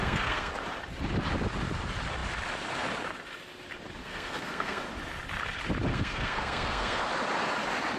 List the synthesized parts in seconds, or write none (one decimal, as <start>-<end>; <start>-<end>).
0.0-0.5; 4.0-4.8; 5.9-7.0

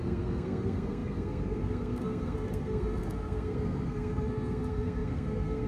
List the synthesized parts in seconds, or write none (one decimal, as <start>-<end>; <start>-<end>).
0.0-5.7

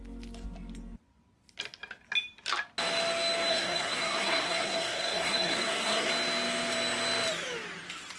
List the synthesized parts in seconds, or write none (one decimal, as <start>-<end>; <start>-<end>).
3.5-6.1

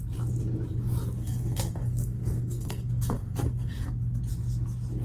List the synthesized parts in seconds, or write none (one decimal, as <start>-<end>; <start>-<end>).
1.2-4.2

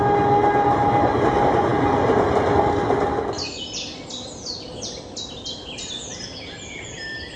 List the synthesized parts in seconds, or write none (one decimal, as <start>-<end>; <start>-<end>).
none

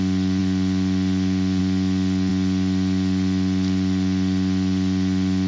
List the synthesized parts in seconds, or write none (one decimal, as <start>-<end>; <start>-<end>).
none